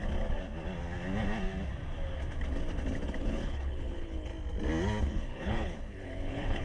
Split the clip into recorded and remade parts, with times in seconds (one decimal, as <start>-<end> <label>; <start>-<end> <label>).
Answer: 0.0-3.2 recorded; 3.2-4.3 remade; 4.3-5.0 recorded; 5.0-6.6 remade